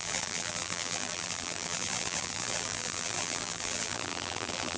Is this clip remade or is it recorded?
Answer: remade